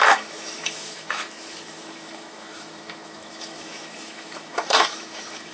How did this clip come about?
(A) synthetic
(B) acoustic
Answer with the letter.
A